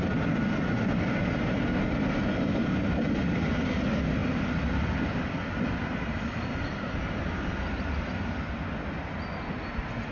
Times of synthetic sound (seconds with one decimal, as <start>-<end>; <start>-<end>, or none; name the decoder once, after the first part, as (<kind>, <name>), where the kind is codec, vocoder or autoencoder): none